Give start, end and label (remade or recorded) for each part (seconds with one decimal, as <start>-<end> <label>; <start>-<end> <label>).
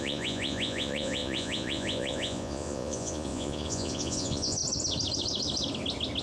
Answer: 0.0-4.6 remade; 4.6-6.2 recorded